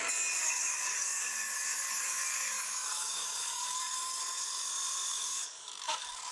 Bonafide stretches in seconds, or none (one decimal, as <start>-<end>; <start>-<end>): 0.0-0.4; 4.2-5.1